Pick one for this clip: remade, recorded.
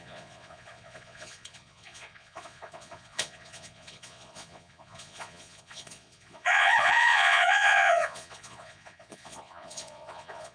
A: remade